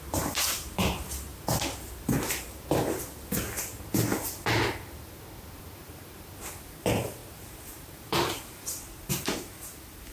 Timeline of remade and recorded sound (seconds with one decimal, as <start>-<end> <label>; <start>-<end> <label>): 0.0-1.3 remade; 1.3-5.6 recorded; 5.6-10.1 remade